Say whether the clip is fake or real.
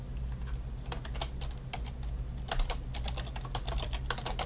real